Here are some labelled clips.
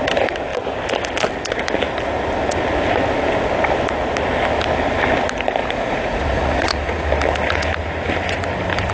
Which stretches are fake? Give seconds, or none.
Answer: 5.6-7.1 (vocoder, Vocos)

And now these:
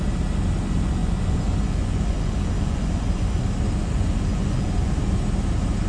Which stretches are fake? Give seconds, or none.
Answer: 1.0-3.4 (vocoder, Vocos); 3.8-5.0

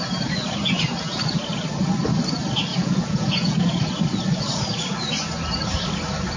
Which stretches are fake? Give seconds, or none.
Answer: 2.7-3.9 (vocoder, Vocos)